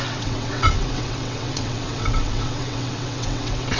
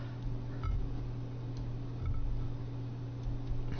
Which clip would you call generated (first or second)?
first